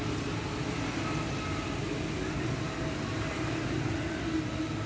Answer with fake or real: real